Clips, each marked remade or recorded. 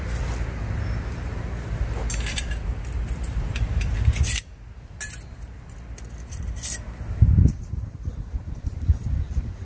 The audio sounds recorded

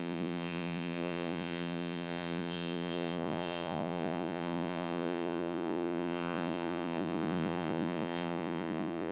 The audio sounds remade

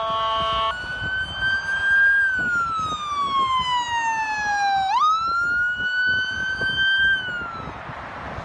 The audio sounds recorded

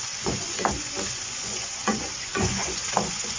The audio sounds remade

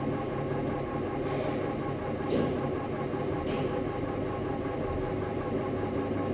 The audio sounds recorded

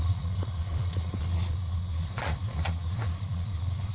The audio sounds remade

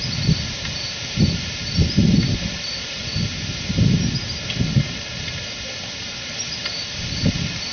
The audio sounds recorded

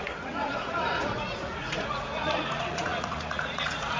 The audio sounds remade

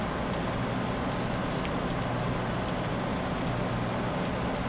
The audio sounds recorded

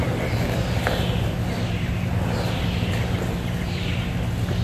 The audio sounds recorded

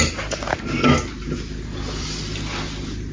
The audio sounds recorded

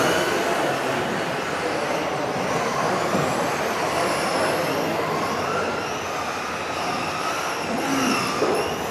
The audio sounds recorded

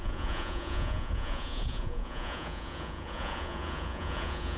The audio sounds remade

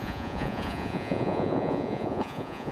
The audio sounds remade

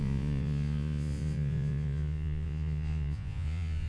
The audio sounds remade